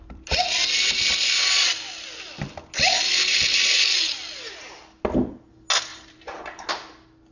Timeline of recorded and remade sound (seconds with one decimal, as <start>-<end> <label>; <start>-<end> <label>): 0.0-5.9 recorded; 5.9-6.7 remade; 6.7-7.3 recorded